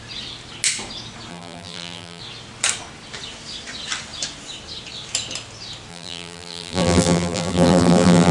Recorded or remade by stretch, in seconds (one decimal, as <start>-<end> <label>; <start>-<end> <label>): 0.0-1.3 recorded; 1.3-2.2 remade; 2.2-5.9 recorded; 5.9-8.3 remade